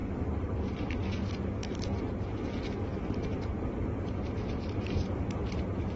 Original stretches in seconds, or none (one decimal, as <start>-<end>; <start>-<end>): 1.1-1.6; 2.5-3.7